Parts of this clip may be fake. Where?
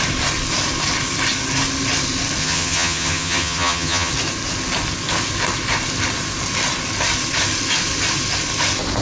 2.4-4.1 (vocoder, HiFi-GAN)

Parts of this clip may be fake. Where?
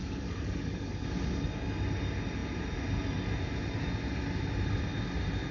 0.0-0.9 (codec, DAC)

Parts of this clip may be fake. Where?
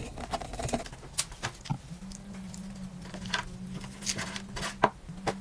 none